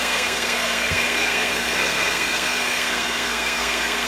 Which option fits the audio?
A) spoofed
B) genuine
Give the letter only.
A